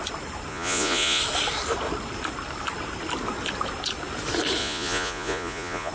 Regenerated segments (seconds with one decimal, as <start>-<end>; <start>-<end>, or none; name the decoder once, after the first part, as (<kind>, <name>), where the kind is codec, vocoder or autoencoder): 0.5-1.2 (vocoder, Vocos); 4.6-5.9